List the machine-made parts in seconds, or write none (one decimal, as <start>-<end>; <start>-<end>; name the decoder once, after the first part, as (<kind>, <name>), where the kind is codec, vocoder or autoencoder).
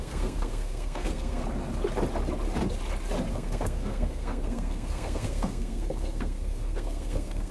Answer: 0.0-1.4 (codec, SNAC); 3.3-7.5